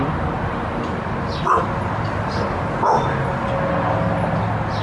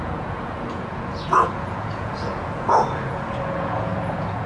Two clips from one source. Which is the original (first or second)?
first